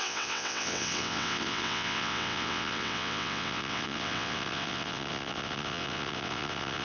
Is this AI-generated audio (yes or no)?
yes